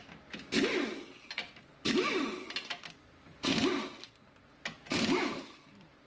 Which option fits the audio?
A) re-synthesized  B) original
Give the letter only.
B